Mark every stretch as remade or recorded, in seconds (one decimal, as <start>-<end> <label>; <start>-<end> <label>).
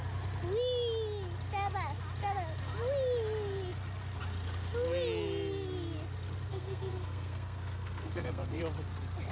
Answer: 0.0-6.5 recorded; 6.5-8.6 remade; 8.6-9.3 recorded